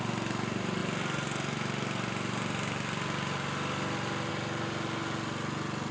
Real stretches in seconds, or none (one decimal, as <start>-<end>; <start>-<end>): 0.0-5.9